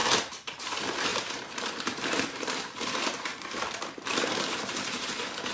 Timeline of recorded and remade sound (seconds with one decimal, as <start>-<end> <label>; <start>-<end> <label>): 0.0-3.3 remade; 3.3-4.2 recorded; 4.2-5.5 remade